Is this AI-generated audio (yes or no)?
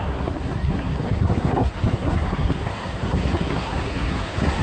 yes